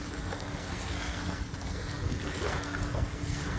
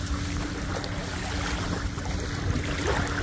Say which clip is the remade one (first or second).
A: first